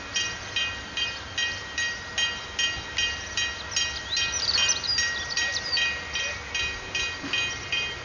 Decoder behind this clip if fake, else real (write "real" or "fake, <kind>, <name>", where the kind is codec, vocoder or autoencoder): real